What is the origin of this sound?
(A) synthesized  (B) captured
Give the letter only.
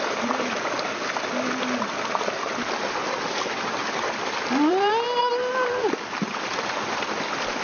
B